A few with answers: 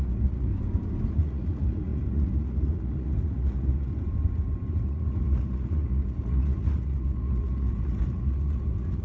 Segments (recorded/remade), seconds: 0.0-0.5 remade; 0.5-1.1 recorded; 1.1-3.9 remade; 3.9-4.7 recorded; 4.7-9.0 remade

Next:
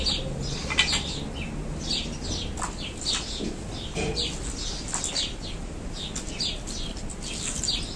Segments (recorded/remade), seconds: 0.0-8.0 recorded